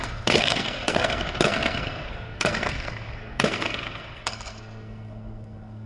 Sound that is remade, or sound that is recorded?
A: remade